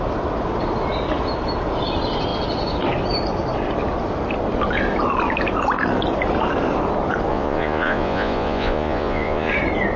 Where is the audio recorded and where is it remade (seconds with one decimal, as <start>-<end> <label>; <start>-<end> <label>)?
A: 0.0-7.3 recorded; 7.3-9.5 remade; 9.5-10.0 recorded